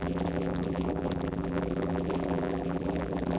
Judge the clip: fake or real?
fake